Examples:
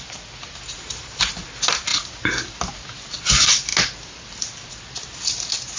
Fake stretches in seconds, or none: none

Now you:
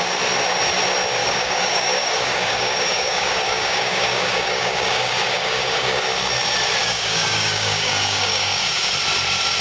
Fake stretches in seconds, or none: 1.2-6.0 (codec, DAC); 6.8-8.9

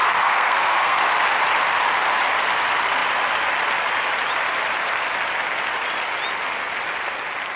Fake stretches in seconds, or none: 0.0-1.0 (codec, SNAC)

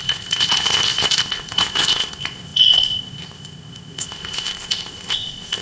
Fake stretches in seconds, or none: 0.0-5.6 (codec, ZipCodec)

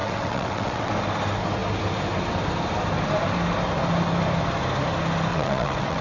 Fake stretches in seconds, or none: 0.0-0.9 (vocoder, WaveNeXt); 5.3-6.0

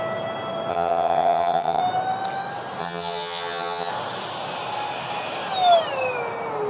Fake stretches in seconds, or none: 0.7-1.8 (vocoder, HiFi-GAN); 2.8-3.9

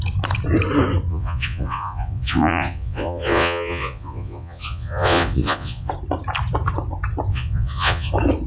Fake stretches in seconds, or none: 1.1-5.9 (vocoder, Vocos); 7.3-8.1

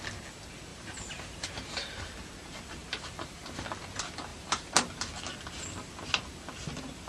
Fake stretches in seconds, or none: 0.7-2.0 (vocoder, BigVGAN v2); 2.8-3.6; 4.3-4.9